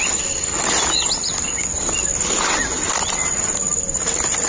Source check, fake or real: real